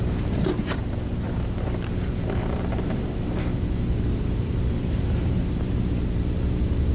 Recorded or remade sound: remade